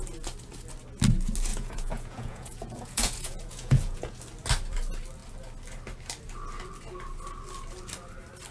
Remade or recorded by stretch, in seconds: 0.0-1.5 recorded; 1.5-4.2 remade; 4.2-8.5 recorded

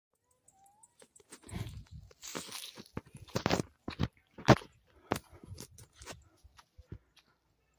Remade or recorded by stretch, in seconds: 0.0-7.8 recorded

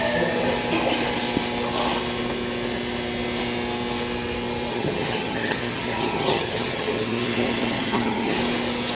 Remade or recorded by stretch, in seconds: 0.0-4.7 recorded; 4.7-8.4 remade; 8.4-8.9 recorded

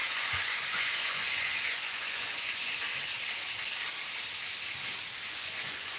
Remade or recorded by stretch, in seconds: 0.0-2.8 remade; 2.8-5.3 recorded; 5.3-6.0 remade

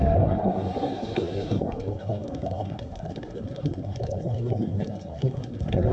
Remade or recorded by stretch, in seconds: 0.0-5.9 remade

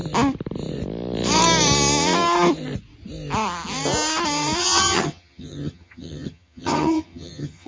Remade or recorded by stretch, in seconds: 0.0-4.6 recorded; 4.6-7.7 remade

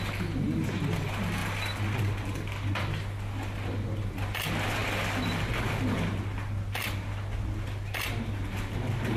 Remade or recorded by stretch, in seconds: 0.0-9.2 recorded

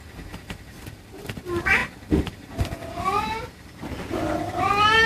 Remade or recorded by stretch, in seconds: 0.0-5.1 recorded